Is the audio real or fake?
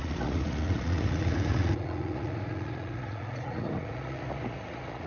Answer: fake